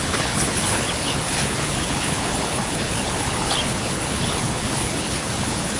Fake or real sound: fake